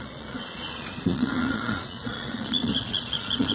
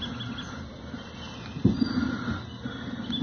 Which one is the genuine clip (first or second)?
second